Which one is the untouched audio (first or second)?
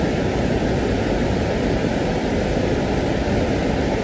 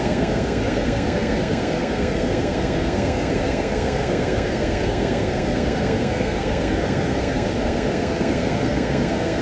first